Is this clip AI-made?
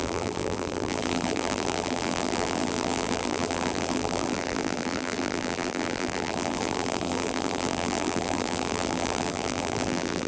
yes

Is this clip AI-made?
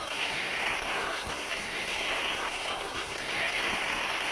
yes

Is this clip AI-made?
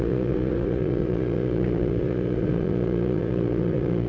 yes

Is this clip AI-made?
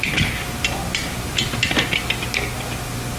no